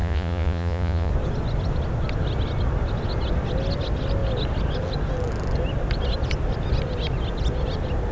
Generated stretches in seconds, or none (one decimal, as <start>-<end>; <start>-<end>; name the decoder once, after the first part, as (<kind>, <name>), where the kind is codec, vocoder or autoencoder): 0.0-1.1 (vocoder, Vocos)